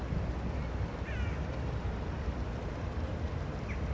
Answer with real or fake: real